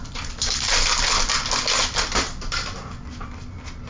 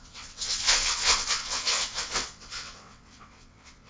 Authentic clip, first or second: first